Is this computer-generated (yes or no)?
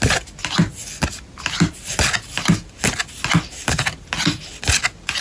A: no